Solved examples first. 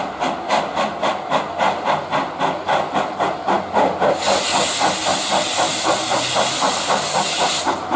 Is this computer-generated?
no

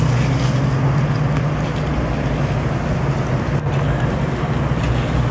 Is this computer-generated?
no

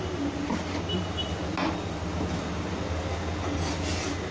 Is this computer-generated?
no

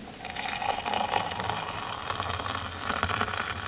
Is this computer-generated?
no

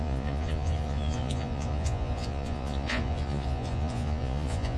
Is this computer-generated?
yes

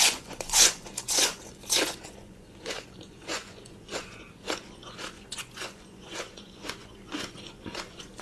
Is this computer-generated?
yes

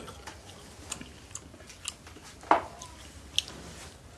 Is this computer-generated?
no